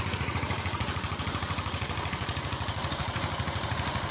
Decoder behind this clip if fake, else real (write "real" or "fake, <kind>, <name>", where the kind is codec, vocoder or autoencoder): fake, vocoder, Vocos